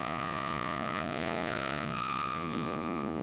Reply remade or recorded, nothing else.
remade